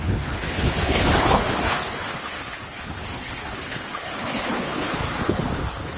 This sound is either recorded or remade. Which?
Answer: remade